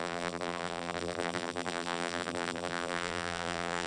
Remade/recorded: remade